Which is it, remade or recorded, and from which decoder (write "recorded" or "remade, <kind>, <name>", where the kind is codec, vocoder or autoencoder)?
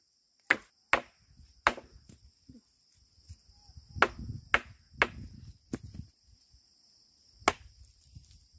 recorded